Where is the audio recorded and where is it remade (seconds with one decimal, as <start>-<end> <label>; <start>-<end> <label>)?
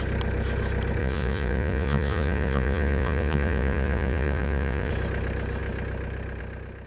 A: 0.0-1.0 recorded; 1.0-4.9 remade; 4.9-6.9 recorded